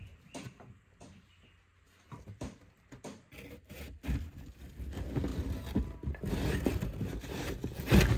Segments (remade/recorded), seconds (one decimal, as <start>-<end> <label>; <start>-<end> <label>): 0.0-8.2 recorded